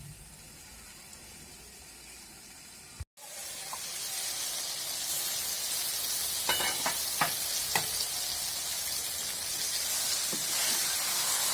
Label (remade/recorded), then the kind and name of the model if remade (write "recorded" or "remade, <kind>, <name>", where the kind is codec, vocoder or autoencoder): recorded